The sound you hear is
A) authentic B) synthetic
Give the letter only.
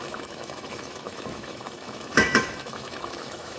B